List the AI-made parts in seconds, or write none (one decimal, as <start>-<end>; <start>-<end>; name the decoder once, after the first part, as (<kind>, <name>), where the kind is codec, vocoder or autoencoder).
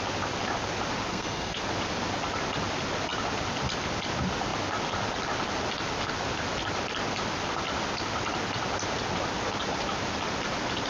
1.1-1.6 (codec, SNAC)